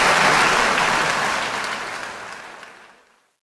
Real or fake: real